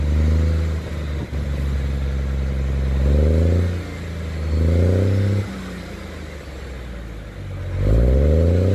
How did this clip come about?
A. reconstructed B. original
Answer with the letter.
B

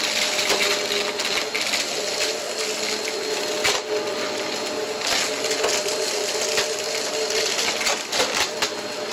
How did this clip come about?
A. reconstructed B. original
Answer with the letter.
B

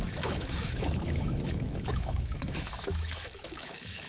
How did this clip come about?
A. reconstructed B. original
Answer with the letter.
A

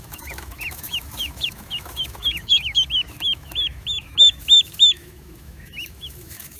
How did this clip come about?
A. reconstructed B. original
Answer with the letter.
A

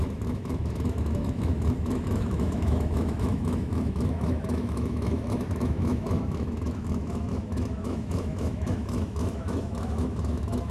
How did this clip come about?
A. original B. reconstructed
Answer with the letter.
B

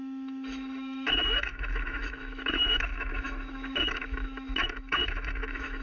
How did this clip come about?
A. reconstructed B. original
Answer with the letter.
A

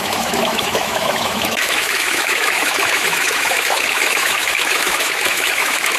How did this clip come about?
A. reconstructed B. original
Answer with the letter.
A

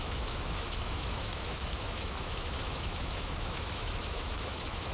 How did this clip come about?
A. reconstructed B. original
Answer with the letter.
A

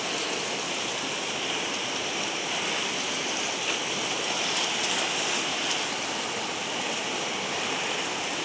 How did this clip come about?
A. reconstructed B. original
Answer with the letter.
B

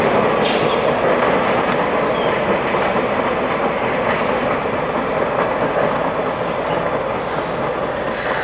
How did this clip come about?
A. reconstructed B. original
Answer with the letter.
B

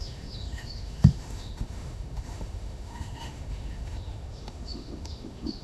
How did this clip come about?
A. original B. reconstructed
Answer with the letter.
B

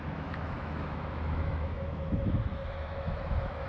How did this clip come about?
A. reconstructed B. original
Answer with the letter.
A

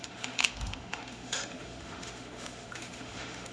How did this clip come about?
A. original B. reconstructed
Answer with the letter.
B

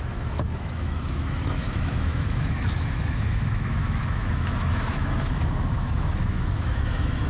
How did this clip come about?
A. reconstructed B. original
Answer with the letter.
A